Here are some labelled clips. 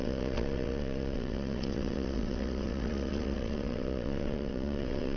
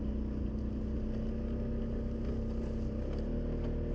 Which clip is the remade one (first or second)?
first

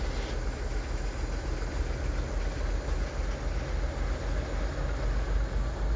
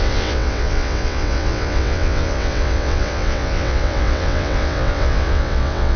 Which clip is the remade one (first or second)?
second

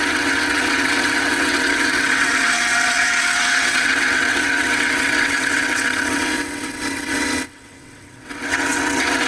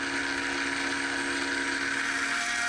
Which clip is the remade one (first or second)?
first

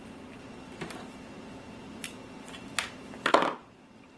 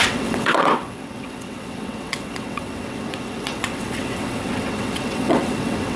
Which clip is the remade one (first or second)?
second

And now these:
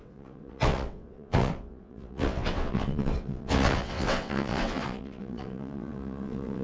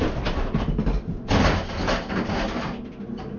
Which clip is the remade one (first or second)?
first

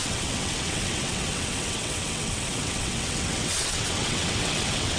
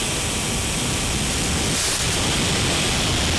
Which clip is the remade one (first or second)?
first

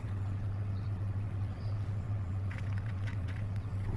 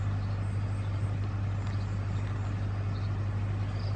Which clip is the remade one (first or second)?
first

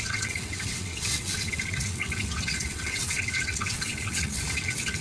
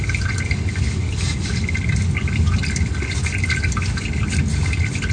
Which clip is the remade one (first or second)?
first